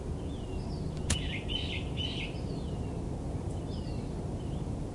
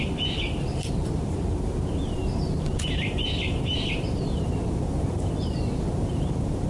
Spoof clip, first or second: second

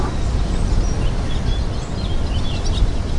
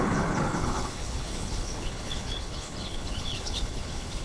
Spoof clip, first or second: second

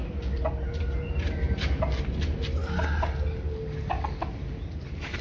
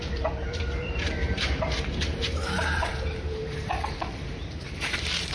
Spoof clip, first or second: second